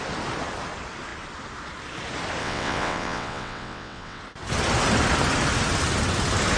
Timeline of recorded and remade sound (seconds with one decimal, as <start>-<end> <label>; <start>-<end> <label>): 0.0-2.4 recorded; 2.4-4.2 remade; 4.2-6.6 recorded